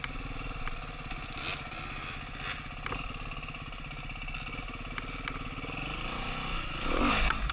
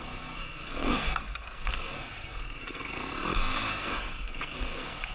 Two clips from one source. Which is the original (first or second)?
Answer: first